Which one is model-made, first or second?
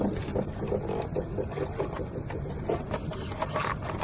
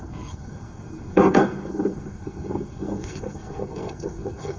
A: second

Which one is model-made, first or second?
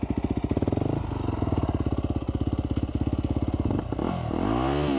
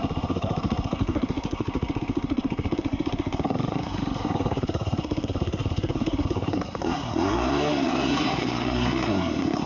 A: second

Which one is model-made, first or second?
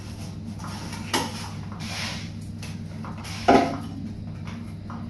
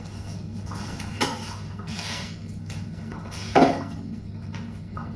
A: second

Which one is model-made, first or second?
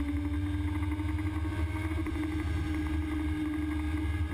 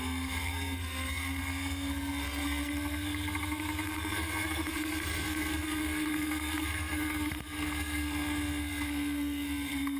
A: second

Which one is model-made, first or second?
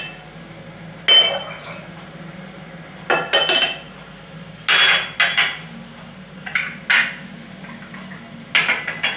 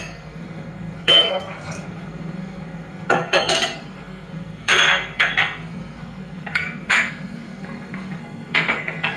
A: second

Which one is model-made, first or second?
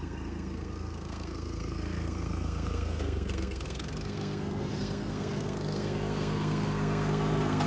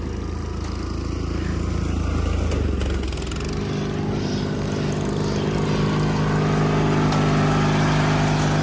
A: first